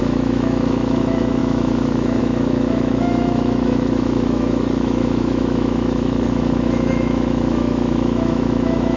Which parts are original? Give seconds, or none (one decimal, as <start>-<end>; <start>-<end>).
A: none